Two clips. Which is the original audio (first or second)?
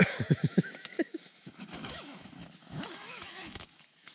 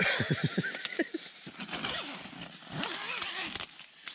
second